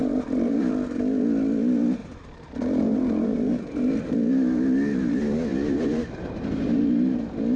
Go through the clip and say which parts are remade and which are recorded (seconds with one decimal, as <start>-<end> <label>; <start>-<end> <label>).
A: 0.0-0.6 remade; 0.6-2.0 recorded; 2.0-3.9 remade; 3.9-5.5 recorded; 5.5-6.8 remade; 6.8-7.6 recorded

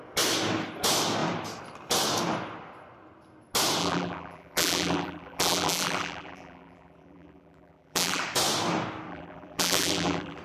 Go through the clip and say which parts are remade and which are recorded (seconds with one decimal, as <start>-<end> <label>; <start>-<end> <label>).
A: 0.0-3.8 recorded; 3.8-8.2 remade; 8.2-9.1 recorded; 9.1-10.4 remade

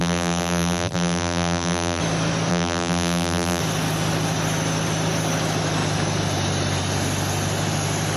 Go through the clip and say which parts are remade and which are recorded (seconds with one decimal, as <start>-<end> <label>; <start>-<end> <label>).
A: 0.0-2.0 remade; 2.0-2.5 recorded; 2.5-3.6 remade; 3.6-8.2 recorded

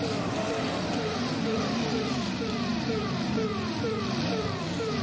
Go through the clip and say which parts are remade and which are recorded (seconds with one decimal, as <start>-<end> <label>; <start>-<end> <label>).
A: 0.0-5.0 remade

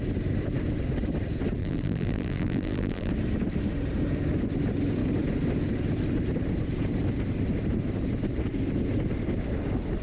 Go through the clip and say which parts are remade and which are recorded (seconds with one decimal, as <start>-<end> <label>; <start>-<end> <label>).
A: 0.0-1.6 recorded; 1.6-3.1 remade; 3.1-10.0 recorded

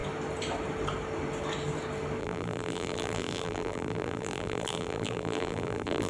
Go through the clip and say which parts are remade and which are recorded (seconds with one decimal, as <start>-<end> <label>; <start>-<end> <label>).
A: 0.0-2.2 recorded; 2.2-6.1 remade